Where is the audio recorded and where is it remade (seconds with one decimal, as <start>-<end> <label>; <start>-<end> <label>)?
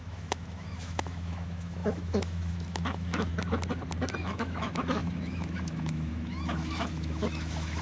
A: 0.0-3.3 remade; 3.3-4.2 recorded; 4.2-7.8 remade